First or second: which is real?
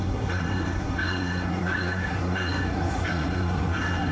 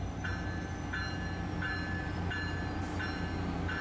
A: second